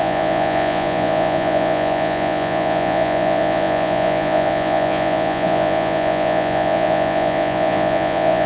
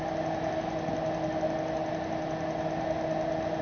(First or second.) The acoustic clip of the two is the second